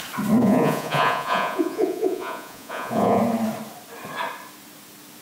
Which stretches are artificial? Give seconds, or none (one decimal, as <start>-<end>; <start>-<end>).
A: 0.4-3.2